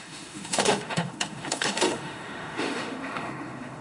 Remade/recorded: remade